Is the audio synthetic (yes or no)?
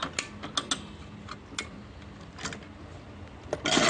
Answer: no